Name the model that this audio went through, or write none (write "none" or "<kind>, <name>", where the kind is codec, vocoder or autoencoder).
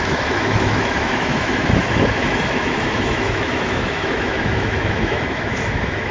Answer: autoencoder, DAC-VAE